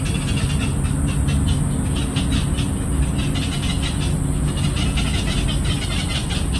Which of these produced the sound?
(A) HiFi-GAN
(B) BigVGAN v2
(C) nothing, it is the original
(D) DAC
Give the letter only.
C